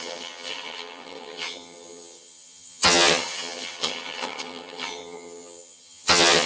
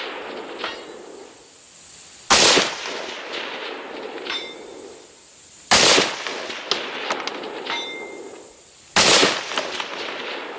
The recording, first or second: second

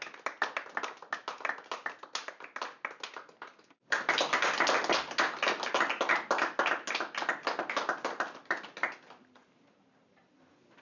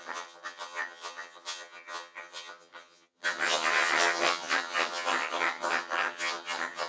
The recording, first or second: first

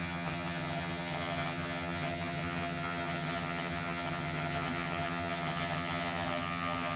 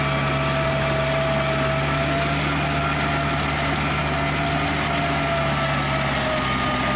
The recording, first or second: second